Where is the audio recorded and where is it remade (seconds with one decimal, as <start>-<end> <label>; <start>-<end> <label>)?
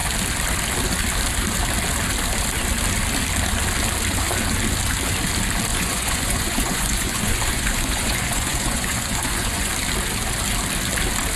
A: 0.0-5.7 recorded; 5.7-9.7 remade; 9.7-11.4 recorded